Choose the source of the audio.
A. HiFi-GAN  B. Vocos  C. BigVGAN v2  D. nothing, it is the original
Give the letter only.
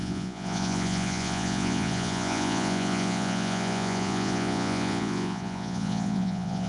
B